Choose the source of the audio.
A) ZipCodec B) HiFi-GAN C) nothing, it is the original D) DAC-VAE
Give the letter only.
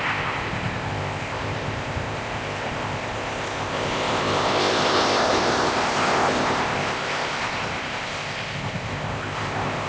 A